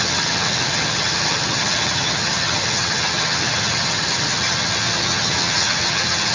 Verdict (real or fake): fake